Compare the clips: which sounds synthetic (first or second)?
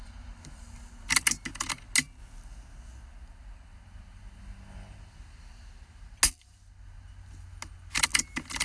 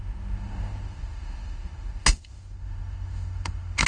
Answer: second